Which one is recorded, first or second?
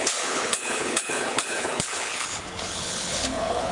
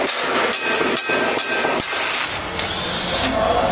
second